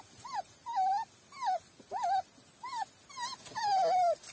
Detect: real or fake real